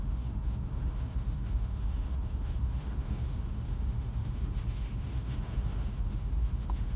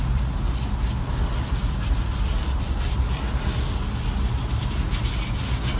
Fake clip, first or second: first